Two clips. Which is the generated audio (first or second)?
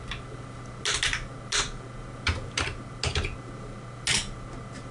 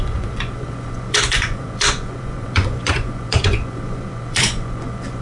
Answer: second